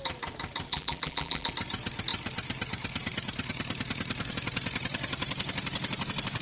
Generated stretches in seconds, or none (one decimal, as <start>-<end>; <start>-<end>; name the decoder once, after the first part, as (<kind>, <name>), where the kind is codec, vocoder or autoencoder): 0.7-1.5 (vocoder, BigVGAN v2)